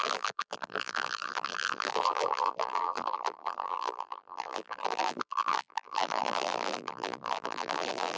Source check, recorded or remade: remade